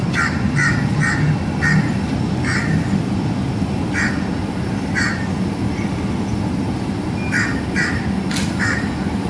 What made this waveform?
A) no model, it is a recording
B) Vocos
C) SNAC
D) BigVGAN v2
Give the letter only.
A